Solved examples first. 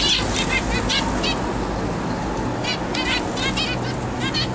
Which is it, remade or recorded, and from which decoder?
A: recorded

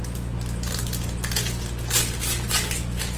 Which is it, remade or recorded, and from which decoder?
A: recorded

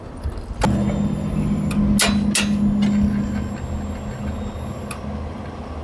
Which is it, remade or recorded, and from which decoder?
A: recorded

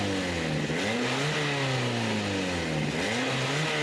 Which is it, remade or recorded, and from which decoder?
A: recorded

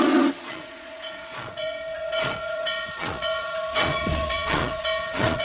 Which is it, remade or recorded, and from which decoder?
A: remade, vocoder, Vocos